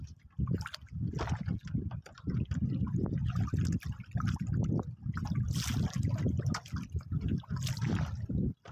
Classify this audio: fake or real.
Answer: real